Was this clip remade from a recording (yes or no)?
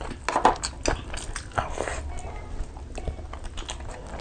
no